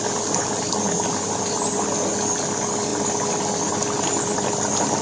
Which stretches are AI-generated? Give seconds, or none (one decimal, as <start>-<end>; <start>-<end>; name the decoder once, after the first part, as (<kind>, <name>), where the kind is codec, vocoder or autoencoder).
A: none